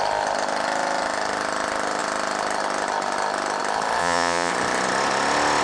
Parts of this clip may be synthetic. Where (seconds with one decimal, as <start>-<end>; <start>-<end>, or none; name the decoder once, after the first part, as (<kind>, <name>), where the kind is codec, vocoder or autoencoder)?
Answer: 4.0-4.5 (vocoder, Vocos)